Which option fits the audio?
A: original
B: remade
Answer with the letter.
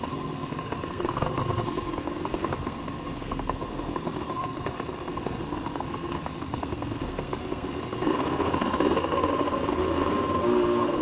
B